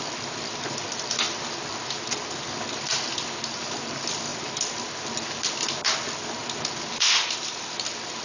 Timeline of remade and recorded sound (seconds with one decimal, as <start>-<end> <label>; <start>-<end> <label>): 0.0-8.2 recorded

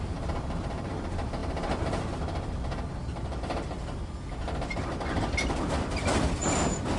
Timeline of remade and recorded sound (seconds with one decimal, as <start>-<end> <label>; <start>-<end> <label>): 0.0-7.0 recorded

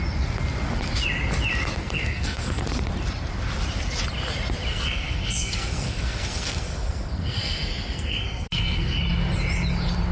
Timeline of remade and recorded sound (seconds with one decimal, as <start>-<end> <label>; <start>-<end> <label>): 0.0-1.8 recorded; 1.8-2.6 remade; 2.6-4.7 recorded; 4.7-9.0 remade; 9.0-10.1 recorded

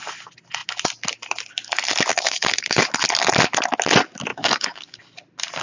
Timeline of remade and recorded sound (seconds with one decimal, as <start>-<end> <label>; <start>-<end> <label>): 0.0-2.1 recorded; 2.1-2.9 remade; 2.9-4.3 recorded; 4.3-5.0 remade; 5.0-5.6 recorded

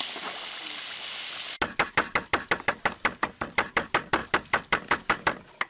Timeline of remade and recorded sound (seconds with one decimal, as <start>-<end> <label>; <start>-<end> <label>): 0.0-5.7 recorded

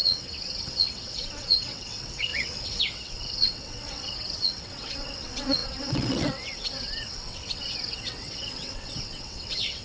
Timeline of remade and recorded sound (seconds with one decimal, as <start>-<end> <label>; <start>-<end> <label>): 0.0-9.8 remade